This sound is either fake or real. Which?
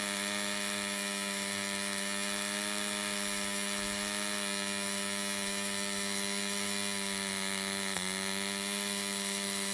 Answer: fake